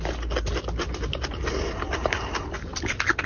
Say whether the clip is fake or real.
real